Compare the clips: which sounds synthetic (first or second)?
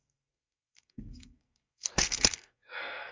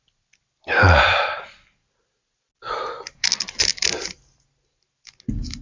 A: first